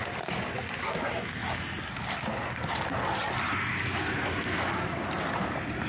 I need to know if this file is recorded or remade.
recorded